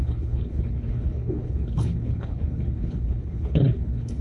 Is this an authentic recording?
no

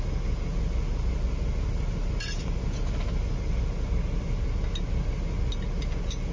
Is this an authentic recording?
yes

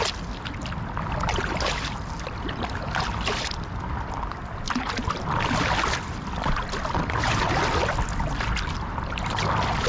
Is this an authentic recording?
yes